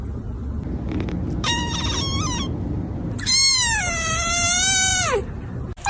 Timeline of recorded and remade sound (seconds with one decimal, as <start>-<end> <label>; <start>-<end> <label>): 0.0-5.9 recorded